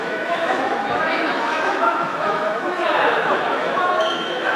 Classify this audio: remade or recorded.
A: remade